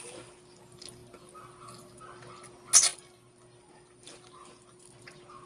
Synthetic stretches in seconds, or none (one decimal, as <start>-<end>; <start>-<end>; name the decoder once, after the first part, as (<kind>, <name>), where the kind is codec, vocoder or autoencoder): none